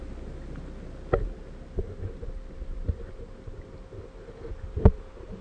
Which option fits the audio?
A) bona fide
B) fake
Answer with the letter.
A